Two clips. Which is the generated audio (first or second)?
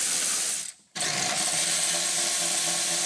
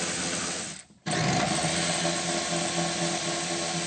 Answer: first